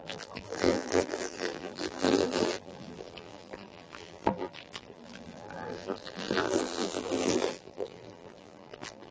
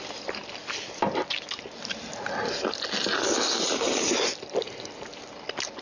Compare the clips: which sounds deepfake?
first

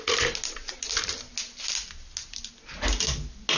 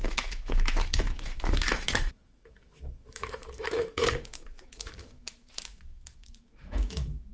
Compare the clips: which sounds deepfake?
second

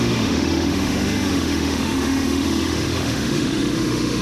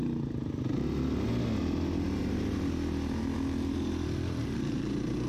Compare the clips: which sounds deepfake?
first